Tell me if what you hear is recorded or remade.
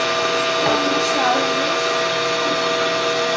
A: recorded